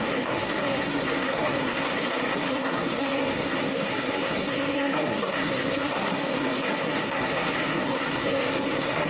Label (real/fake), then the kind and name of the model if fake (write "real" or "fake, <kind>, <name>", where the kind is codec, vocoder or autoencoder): fake, codec, SNAC